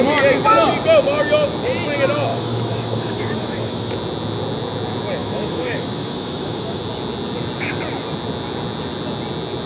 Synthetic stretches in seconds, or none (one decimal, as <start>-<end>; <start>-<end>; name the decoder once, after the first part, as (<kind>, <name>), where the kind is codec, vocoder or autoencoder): 2.3-3.9 (autoencoder, DAC-VAE); 5.2-6.8

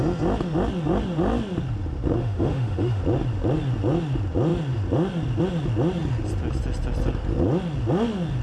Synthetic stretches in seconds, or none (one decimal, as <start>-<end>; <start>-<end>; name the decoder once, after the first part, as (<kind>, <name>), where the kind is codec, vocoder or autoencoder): 2.2-3.0 (autoencoder, DAC-VAE)

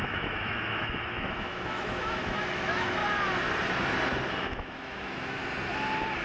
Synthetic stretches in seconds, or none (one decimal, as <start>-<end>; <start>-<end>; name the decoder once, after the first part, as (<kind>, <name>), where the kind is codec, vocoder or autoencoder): 0.0-3.0 (autoencoder, DAC-VAE); 4.3-5.4

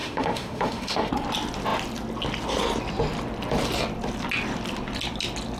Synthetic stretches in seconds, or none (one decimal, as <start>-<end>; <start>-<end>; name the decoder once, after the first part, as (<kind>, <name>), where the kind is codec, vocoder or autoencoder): 0.0-1.1 (autoencoder, DAC-VAE)

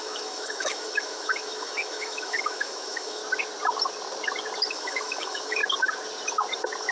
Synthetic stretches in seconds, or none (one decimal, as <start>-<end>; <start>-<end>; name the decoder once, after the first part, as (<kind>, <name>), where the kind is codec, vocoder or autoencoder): 0.0-3.2 (autoencoder, DAC-VAE); 4.7-5.6

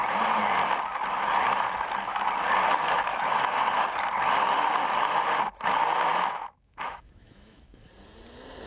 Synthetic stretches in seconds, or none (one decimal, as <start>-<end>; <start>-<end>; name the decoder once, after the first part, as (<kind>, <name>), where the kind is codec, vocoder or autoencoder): 6.1-7.9 (autoencoder, DAC-VAE)